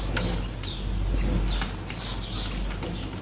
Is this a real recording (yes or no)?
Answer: no